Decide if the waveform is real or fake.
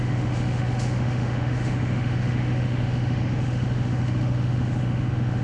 fake